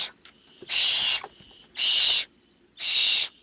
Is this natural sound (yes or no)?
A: yes